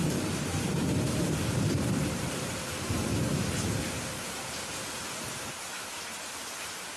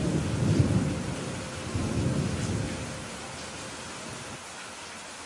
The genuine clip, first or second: second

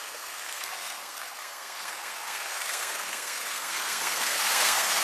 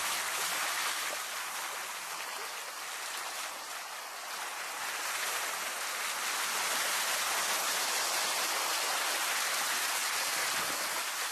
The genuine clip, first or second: second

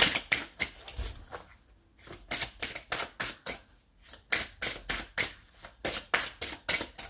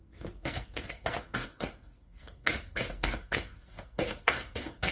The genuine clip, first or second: first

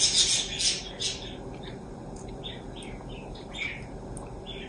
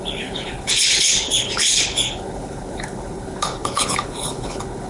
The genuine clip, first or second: first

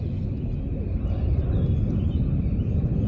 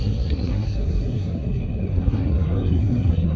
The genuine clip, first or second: first